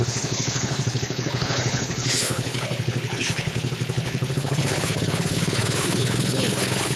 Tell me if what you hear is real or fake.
fake